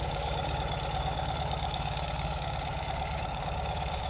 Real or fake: fake